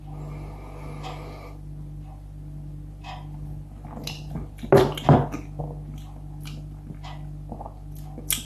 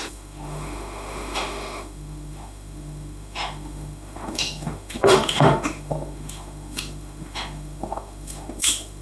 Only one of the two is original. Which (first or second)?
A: first